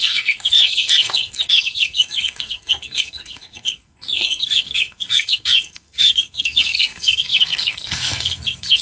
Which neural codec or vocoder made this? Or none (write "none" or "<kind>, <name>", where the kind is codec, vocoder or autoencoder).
codec, SNAC